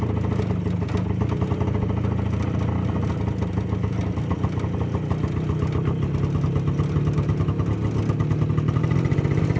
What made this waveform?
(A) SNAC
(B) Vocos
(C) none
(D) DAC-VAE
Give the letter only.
C